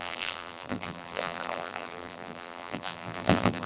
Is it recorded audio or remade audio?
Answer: remade